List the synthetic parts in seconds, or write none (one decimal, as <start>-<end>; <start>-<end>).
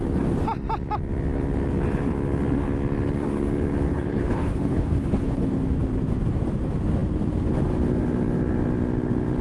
3.9-5.5